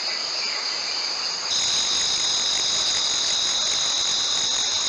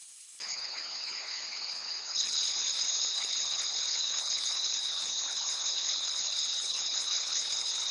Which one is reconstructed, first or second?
second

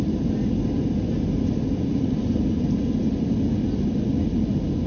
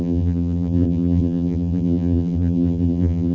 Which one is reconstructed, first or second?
second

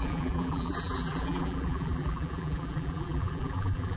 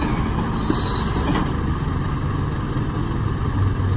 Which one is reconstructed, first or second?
first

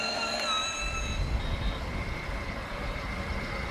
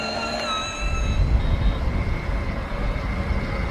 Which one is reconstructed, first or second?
first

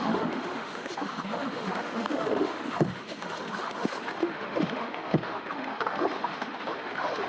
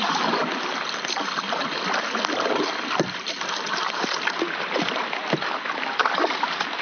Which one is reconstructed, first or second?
first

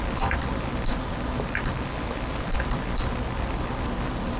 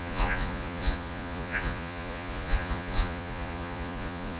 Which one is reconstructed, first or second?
second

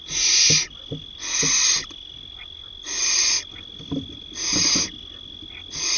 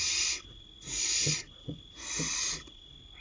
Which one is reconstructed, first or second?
second